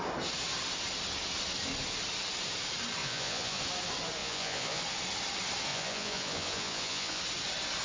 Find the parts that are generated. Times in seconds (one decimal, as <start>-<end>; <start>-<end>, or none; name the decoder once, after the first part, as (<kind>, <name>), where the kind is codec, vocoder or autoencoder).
3.0-3.6 (vocoder, Vocos); 4.2-4.8; 5.7-7.2